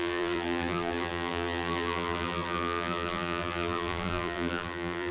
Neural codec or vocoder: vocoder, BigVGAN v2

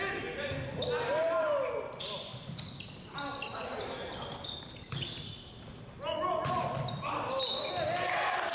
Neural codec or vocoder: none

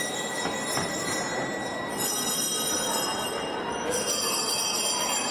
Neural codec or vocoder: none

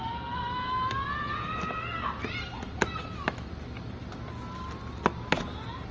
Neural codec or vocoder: none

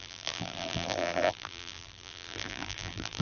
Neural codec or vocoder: vocoder, BigVGAN v2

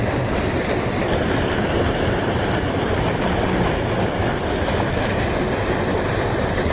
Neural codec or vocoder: none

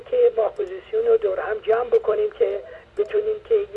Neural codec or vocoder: vocoder, BigVGAN v2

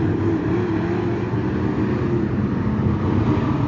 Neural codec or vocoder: none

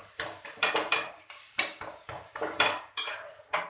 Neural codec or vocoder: vocoder, BigVGAN v2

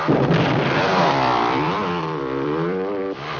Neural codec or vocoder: vocoder, BigVGAN v2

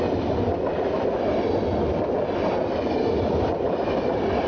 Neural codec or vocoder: none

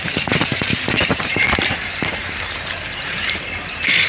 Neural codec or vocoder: vocoder, BigVGAN v2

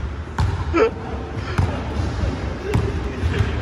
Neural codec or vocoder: vocoder, BigVGAN v2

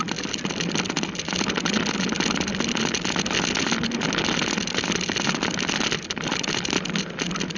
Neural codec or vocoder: none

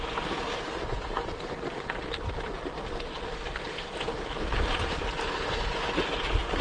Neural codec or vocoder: none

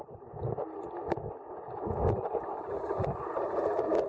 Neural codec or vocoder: none